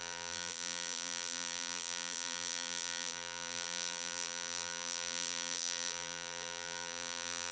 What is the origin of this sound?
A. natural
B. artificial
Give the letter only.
B